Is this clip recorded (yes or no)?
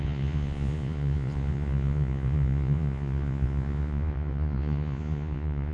no